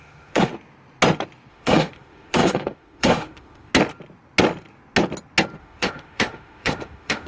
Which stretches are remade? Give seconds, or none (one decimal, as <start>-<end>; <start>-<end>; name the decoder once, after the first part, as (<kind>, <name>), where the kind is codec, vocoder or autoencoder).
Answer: 0.0-0.5 (autoencoder, DAC-VAE); 1.5-3.7; 5.6-7.3